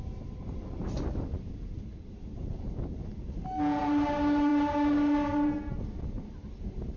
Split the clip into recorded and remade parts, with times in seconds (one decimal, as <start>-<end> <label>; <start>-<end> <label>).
0.0-7.0 recorded